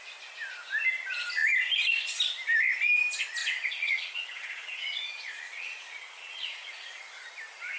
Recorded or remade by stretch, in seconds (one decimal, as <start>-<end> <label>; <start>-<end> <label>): 0.0-3.4 recorded; 3.4-6.7 remade; 6.7-7.8 recorded